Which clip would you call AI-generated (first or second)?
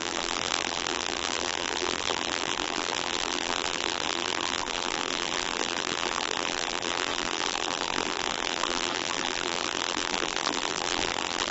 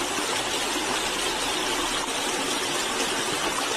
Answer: first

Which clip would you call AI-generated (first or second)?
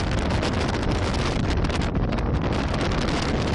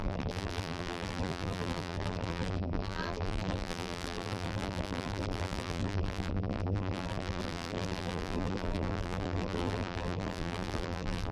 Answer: second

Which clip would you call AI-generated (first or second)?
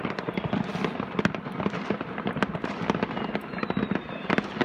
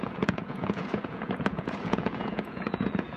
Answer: second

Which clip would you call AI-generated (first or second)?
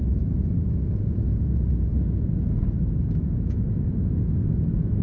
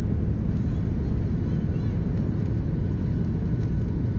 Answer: first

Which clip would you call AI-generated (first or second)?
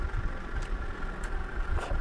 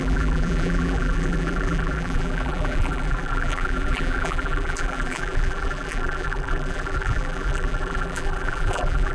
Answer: second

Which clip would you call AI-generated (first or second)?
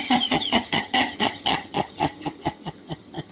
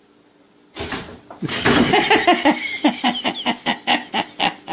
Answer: first